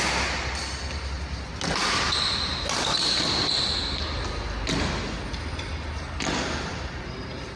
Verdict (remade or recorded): recorded